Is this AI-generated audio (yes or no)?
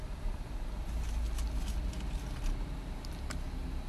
no